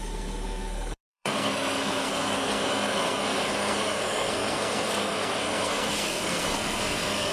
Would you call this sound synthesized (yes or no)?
yes